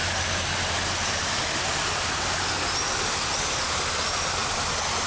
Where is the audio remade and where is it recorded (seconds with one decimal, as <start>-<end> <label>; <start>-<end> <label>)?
0.0-5.1 recorded